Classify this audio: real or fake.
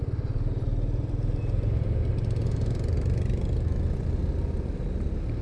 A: real